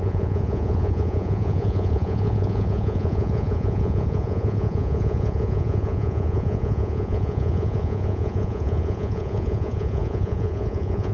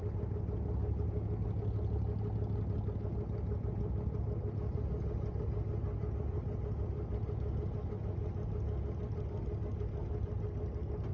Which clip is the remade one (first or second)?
first